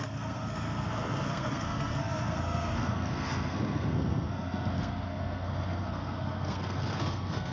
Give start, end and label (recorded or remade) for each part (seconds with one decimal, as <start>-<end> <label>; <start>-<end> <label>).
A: 0.0-7.5 remade